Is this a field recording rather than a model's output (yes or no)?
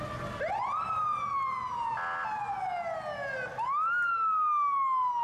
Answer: yes